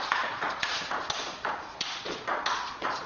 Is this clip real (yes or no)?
no